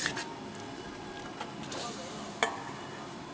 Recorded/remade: recorded